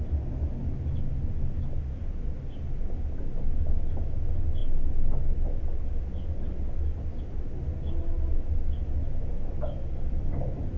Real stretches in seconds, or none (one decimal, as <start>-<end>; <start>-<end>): 0.0-10.8